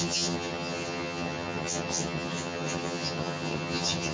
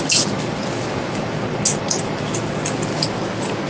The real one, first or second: second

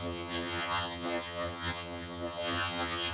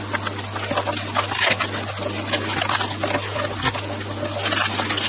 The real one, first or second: second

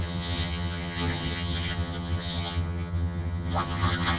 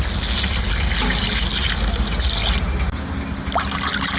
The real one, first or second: second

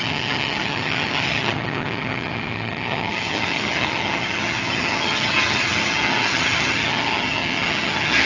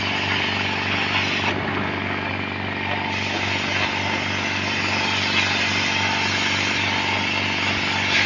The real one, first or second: second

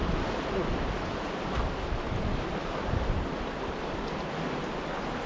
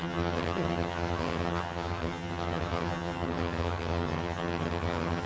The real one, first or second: first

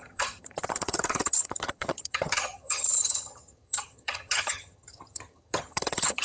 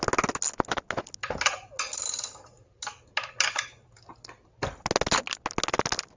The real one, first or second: second